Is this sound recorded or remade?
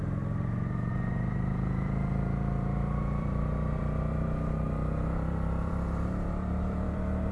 remade